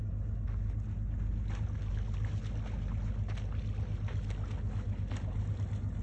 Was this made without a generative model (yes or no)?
yes